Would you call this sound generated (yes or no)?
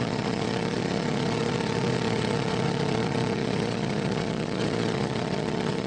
yes